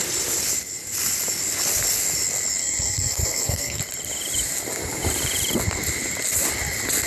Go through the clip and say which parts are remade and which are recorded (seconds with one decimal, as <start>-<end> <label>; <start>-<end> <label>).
0.0-2.6 recorded; 2.6-3.8 remade; 3.8-7.1 recorded